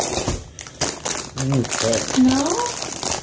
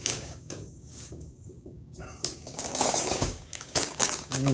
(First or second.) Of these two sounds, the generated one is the second